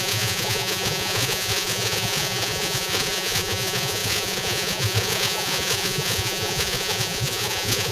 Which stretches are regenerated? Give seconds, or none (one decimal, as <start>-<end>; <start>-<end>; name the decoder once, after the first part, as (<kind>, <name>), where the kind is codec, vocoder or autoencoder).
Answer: 0.0-7.9 (vocoder, Vocos)